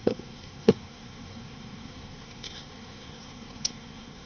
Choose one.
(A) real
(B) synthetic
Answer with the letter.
B